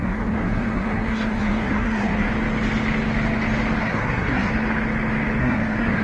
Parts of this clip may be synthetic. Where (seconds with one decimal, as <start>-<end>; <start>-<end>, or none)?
0.0-2.3; 3.8-4.5; 5.4-6.0